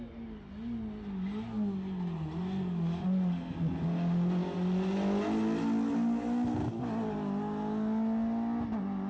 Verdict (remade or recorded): recorded